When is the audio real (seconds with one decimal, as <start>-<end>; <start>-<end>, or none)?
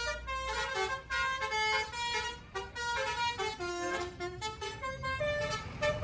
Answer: 0.0-3.7; 5.2-6.0